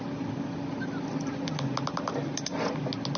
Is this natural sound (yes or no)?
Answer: yes